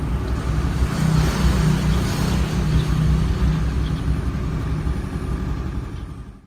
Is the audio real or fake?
real